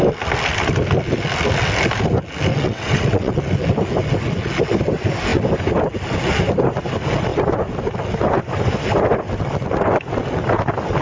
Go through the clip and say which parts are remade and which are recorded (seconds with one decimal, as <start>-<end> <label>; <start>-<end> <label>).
0.0-2.5 recorded; 2.5-3.4 remade; 3.4-11.0 recorded